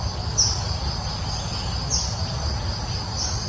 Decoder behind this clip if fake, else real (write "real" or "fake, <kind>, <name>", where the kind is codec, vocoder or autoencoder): real